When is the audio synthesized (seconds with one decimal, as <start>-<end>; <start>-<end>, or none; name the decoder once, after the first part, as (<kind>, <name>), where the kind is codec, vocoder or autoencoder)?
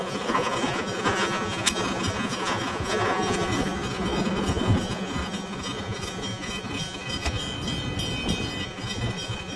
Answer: 0.0-7.4 (vocoder, Vocos); 8.6-9.6